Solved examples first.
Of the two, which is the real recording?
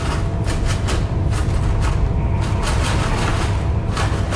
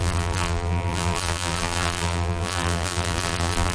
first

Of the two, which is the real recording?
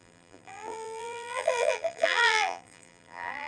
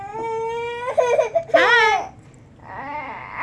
second